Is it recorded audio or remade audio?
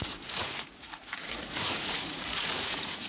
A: remade